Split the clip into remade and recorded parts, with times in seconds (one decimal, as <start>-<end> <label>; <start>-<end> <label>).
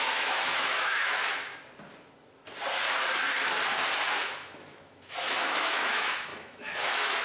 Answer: 0.0-1.5 remade; 1.5-4.2 recorded; 4.2-7.2 remade